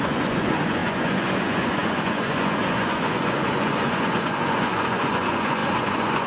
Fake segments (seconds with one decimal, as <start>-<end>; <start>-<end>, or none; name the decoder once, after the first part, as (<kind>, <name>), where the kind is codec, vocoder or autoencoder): 0.0-6.3 (vocoder, Vocos)